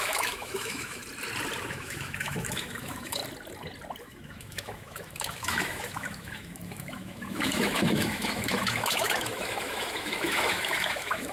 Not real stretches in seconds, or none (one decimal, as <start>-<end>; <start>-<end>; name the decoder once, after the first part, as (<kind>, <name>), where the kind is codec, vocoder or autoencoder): 0.0-1.0 (autoencoder, DAC-VAE); 1.7-3.2; 4.0-11.3